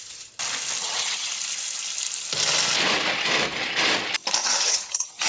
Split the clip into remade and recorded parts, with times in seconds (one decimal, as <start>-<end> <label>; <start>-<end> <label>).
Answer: 0.0-0.8 recorded; 0.8-1.3 remade; 1.3-4.4 recorded; 4.4-5.3 remade